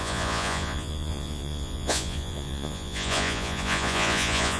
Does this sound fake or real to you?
fake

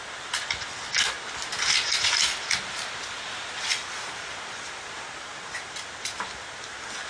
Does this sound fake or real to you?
real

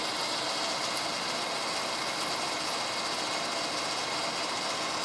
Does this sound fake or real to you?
real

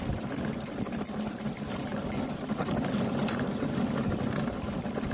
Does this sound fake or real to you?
real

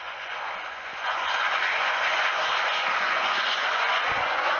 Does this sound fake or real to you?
fake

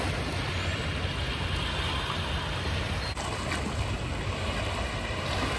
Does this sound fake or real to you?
real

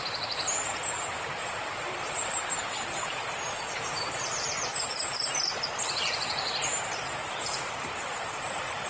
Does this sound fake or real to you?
fake